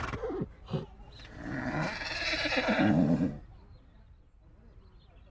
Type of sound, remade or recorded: recorded